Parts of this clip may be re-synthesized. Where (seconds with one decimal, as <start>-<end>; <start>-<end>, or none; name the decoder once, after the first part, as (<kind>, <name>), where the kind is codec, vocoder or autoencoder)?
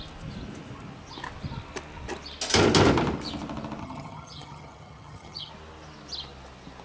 3.8-5.5 (vocoder, HiFi-GAN)